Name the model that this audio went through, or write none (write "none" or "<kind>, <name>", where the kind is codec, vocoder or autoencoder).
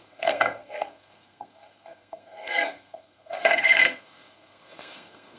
codec, SNAC